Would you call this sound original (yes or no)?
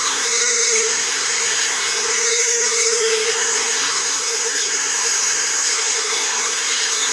no